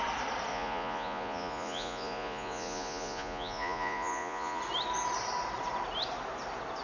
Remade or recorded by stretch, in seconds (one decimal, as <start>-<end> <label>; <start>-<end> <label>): 0.0-0.5 recorded; 0.5-4.6 remade; 4.6-6.8 recorded